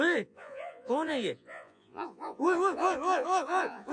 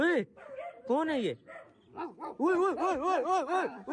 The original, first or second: second